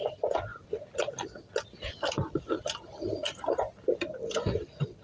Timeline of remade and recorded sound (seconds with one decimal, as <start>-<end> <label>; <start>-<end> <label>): 0.0-5.0 recorded